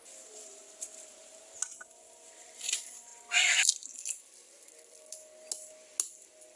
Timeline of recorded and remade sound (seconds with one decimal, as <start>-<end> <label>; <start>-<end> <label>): 0.0-6.6 recorded